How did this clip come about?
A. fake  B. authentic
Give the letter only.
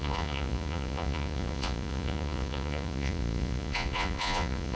A